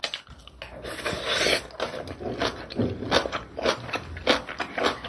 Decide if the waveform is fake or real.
real